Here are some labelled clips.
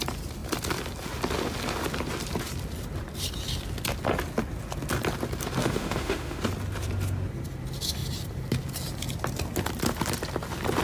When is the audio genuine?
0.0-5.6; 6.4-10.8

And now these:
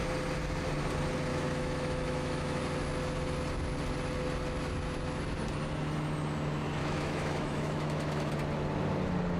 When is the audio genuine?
0.0-1.3; 2.6-6.8; 8.3-9.4

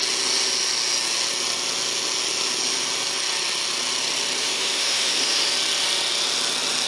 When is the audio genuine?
0.0-4.4; 5.5-6.9

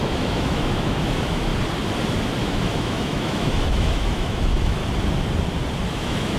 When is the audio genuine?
1.5-2.4; 4.8-5.9

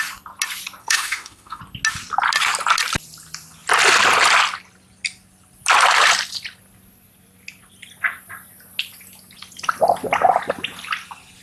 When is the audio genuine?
0.0-0.8; 1.6-11.4

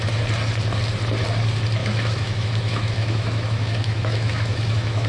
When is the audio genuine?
0.0-1.8